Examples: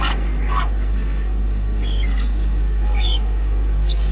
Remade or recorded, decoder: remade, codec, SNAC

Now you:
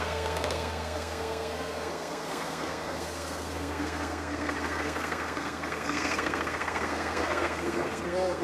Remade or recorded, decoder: remade, codec, SNAC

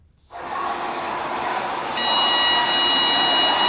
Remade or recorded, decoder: recorded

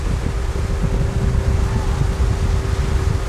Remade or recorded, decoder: recorded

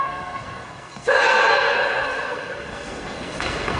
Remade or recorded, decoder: remade, codec, SNAC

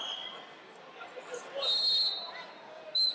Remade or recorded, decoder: recorded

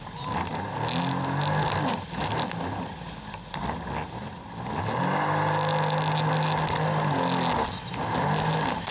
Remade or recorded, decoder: recorded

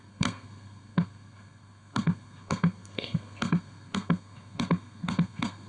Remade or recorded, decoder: remade, codec, SNAC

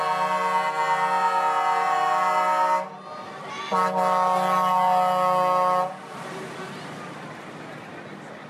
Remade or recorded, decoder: recorded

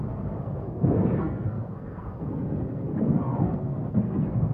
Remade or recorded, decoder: remade, codec, SNAC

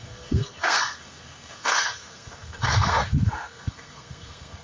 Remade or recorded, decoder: remade, codec, SNAC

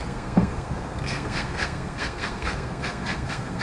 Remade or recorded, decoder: remade, codec, SNAC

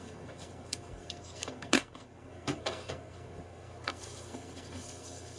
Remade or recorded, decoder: remade, codec, SNAC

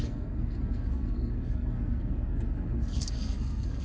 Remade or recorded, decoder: remade, codec, SNAC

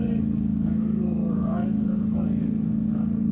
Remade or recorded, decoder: remade, codec, SNAC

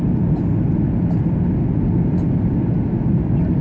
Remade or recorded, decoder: recorded